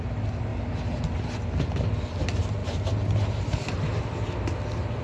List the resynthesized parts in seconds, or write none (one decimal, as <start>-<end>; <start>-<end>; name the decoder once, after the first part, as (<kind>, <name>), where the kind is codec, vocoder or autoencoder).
none